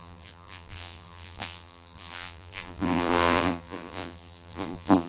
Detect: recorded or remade remade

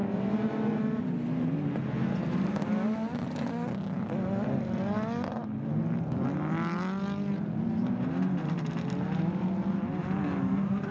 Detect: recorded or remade recorded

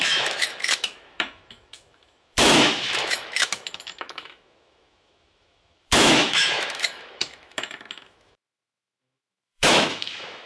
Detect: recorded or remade remade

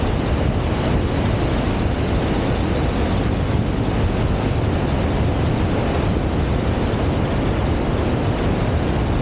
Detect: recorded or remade recorded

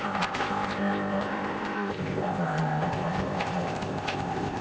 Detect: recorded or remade remade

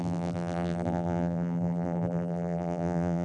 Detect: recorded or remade remade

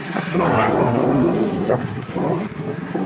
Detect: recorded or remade remade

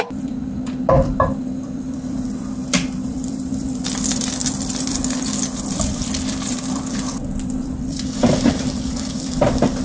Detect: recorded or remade remade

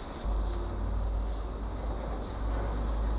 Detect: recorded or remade recorded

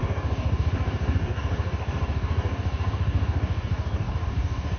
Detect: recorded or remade remade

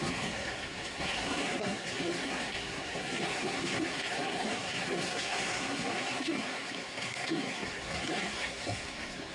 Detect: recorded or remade remade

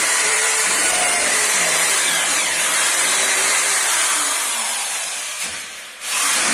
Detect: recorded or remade remade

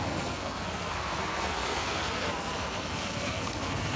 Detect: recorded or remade remade